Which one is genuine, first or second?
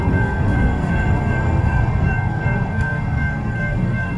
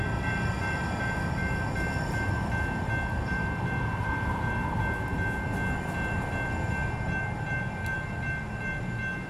second